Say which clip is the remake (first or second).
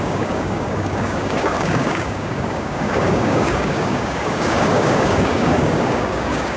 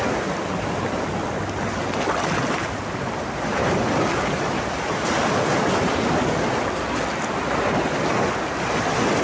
first